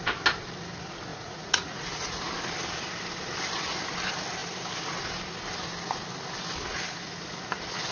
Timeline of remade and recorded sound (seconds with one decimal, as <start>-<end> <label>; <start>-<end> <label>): 0.0-1.1 recorded; 1.1-2.2 remade; 2.2-7.9 recorded